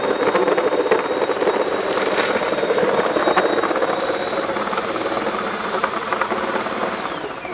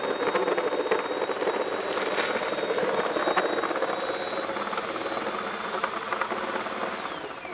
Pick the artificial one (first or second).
first